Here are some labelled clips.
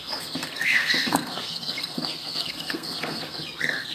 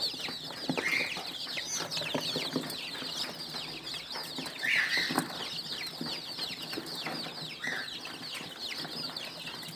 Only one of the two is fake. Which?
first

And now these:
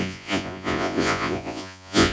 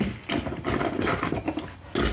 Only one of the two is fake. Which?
first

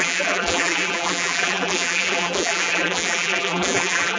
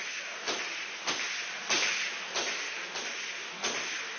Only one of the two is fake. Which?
first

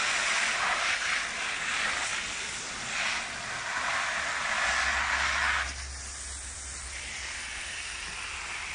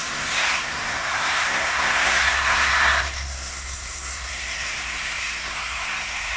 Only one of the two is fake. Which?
second